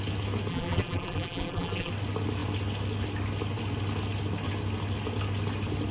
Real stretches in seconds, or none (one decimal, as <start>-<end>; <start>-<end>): 0.0-0.5; 1.9-5.9